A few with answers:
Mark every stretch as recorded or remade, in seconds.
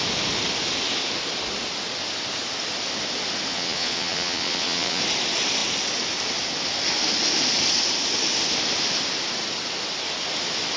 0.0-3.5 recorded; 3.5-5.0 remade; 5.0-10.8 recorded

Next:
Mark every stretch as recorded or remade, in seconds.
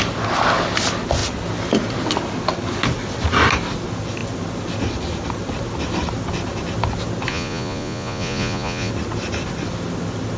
0.0-7.3 recorded; 7.3-8.9 remade; 8.9-10.4 recorded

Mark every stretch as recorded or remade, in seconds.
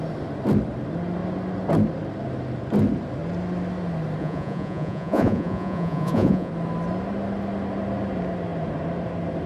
0.0-4.2 recorded; 4.2-6.5 remade; 6.5-9.5 recorded